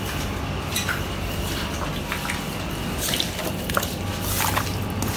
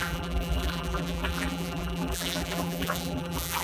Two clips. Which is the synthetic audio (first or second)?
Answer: second